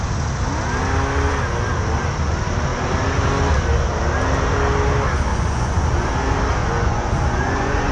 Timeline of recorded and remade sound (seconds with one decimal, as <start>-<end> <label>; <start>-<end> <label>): 0.0-5.3 recorded; 5.3-6.1 remade; 6.1-6.6 recorded; 6.6-7.9 remade